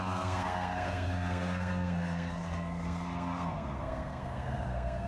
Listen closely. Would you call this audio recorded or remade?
remade